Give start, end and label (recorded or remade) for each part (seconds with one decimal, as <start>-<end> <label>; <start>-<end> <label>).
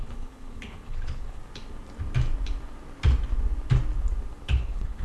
0.0-1.4 remade; 1.4-4.4 recorded; 4.4-5.0 remade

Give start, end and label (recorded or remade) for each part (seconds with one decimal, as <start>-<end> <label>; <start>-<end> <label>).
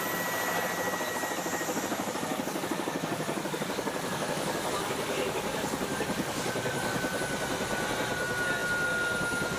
0.0-2.3 recorded; 2.3-7.2 remade; 7.2-9.6 recorded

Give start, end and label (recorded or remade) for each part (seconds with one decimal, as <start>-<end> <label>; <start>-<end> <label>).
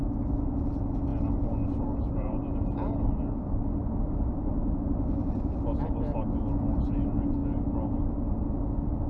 0.0-9.1 recorded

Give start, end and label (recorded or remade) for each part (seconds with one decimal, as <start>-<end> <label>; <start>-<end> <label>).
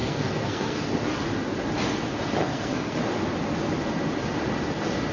0.0-0.8 remade; 0.8-2.4 recorded; 2.4-3.0 remade; 3.0-5.1 recorded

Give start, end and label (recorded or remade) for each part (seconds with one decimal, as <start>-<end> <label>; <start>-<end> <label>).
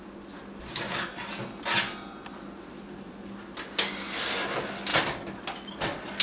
0.0-6.2 recorded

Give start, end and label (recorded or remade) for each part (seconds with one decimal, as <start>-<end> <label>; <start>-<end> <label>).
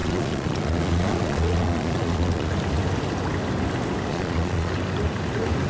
0.0-2.5 remade; 2.5-4.1 recorded; 4.1-4.7 remade; 4.7-5.7 recorded